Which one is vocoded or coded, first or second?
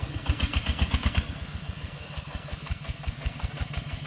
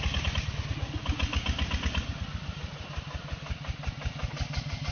first